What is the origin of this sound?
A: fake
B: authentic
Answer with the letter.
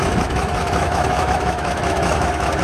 A